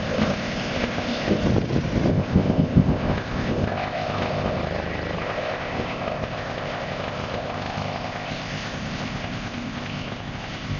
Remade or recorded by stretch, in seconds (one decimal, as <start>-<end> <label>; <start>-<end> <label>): 0.0-1.4 remade; 1.4-2.1 recorded; 2.1-4.6 remade; 4.6-5.2 recorded; 5.2-10.8 remade